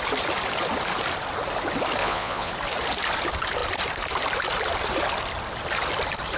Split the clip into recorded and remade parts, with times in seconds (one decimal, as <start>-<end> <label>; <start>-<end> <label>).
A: 0.0-2.0 recorded; 2.0-2.5 remade; 2.5-6.4 recorded